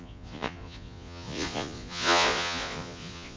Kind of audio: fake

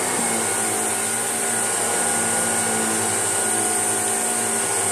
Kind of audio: real